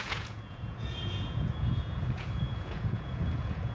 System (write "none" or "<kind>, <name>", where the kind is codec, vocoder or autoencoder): vocoder, Vocos